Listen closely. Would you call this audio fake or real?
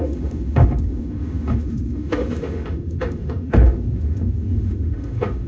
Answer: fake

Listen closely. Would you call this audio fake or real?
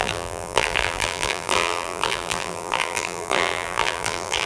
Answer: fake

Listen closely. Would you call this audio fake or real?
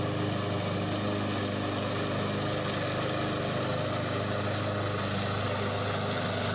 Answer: real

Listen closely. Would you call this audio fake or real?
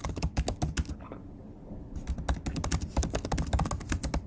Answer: real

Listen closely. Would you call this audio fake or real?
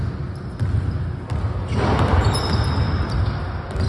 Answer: real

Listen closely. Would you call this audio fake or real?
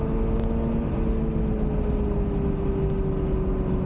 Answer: real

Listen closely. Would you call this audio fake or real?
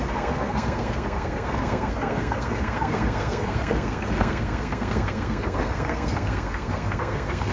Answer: fake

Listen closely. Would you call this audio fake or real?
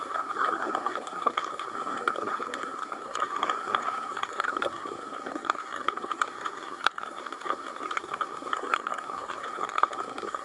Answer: fake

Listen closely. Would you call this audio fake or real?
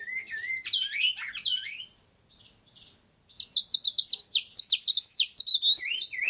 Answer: real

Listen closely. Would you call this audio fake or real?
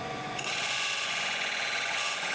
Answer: fake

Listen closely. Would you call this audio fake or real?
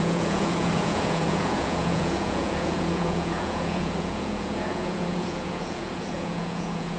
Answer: fake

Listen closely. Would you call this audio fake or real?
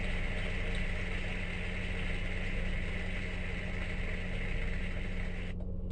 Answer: real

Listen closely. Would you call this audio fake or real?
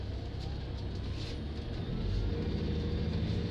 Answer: real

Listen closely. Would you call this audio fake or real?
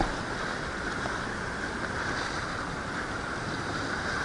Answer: real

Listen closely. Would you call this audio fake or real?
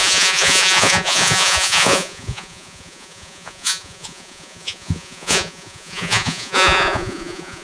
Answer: fake